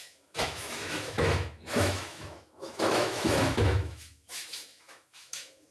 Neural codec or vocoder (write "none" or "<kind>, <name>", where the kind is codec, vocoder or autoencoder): autoencoder, DAC-VAE